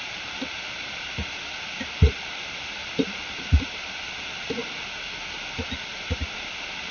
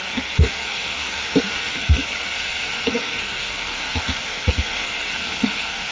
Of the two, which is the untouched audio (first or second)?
first